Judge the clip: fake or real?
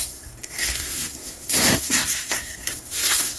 fake